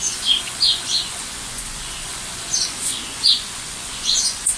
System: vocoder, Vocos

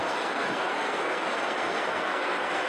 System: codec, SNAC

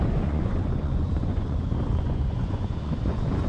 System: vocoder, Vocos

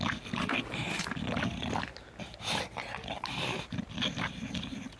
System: none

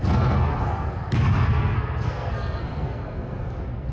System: codec, SNAC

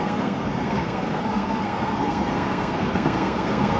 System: codec, SNAC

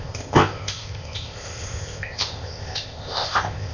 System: codec, ZipCodec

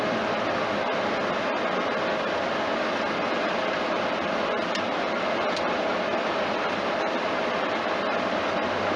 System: none